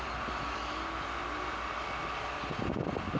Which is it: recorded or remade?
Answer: recorded